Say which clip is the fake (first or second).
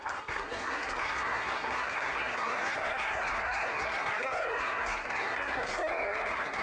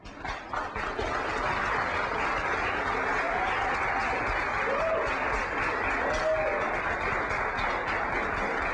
first